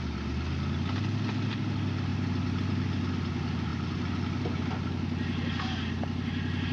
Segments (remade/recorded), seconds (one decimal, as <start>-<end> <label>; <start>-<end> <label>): 0.0-6.7 recorded